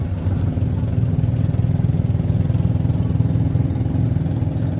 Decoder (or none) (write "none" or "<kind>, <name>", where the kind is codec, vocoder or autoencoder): none